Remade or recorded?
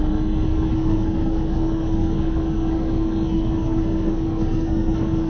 remade